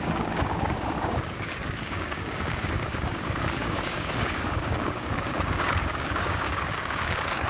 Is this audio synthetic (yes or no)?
yes